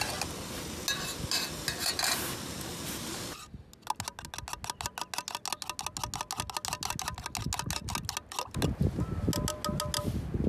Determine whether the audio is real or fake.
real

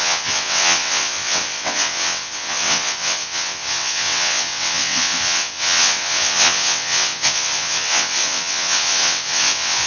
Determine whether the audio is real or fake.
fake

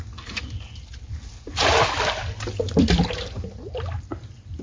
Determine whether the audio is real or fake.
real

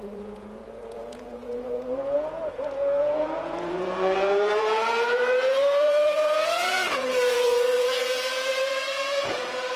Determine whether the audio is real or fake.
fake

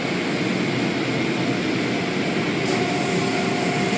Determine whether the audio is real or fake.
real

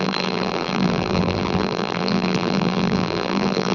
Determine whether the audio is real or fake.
fake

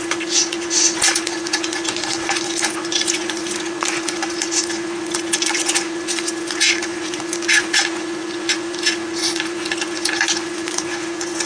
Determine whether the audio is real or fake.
fake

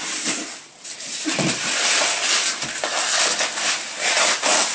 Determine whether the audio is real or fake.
real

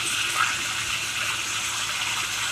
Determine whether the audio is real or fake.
real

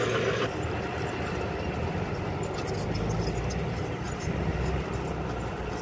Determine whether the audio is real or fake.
real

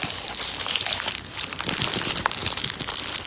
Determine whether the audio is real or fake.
real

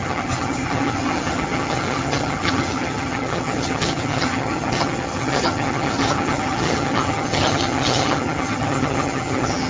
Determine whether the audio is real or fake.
fake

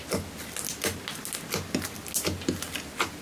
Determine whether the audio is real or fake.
real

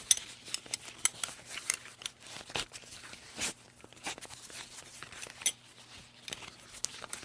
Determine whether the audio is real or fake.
real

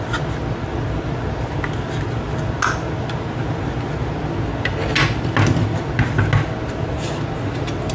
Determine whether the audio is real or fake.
real